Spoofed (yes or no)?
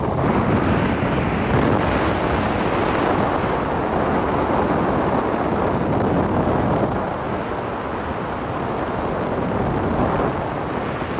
no